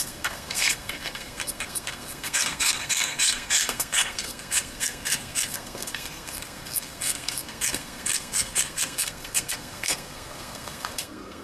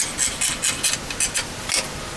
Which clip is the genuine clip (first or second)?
second